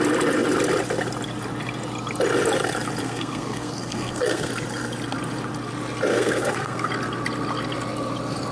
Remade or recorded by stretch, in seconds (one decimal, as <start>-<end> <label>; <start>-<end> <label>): 0.0-3.0 recorded; 3.0-4.5 remade; 4.5-6.1 recorded; 6.1-6.9 remade; 6.9-8.5 recorded